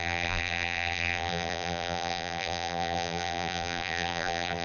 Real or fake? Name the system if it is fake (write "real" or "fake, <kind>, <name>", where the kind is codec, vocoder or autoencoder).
fake, vocoder, BigVGAN v2